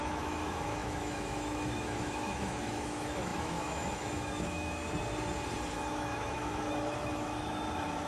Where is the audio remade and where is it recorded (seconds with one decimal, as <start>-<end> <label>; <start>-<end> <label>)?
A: 0.0-4.8 remade; 4.8-5.7 recorded; 5.7-8.1 remade